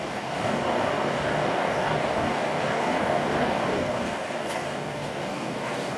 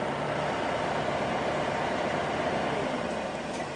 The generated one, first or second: first